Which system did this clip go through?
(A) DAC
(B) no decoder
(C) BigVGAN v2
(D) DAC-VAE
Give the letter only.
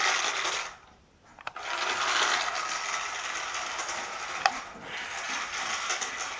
B